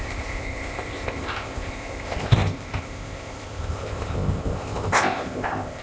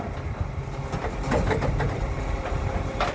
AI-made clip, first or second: first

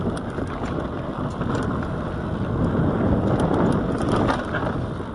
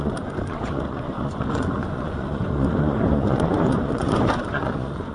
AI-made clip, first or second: second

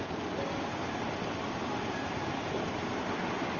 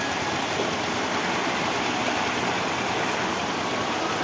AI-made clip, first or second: first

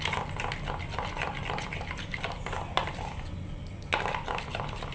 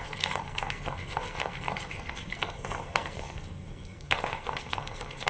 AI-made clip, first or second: second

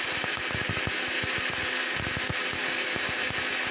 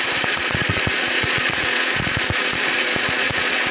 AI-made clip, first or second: second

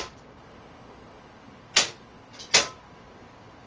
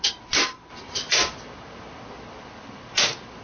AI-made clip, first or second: second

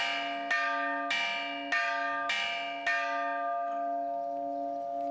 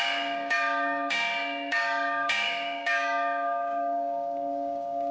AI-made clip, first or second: second